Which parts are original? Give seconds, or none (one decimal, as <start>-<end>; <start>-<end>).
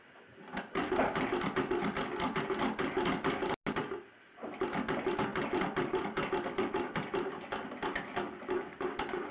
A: 0.0-5.3; 6.0-9.3